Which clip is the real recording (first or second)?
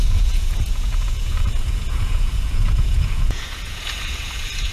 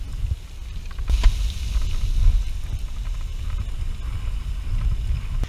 second